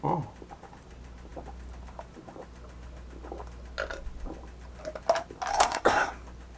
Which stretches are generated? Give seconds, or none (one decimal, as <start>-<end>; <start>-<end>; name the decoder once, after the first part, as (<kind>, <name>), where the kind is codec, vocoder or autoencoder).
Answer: 5.5-6.1 (codec, SNAC)